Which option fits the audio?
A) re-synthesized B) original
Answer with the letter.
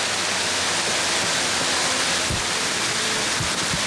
B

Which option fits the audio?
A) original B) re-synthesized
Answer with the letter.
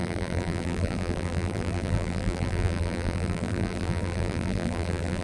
B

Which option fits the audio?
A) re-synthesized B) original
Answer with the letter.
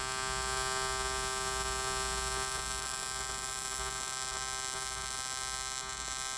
B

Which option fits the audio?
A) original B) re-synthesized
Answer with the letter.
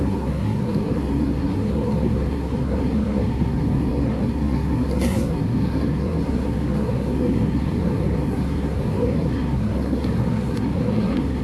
B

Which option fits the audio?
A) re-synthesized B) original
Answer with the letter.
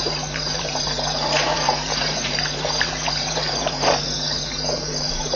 A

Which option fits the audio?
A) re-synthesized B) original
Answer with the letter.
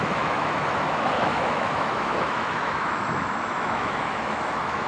A